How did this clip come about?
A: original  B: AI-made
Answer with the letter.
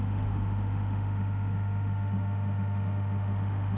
B